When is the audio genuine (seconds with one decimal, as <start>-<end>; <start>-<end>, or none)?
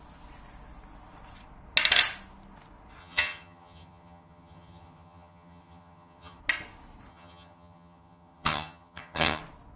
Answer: 0.0-3.0; 6.4-7.1; 9.4-9.8